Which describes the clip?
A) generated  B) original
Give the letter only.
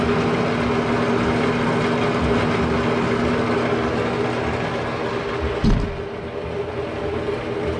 B